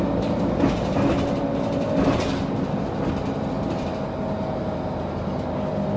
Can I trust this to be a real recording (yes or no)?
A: yes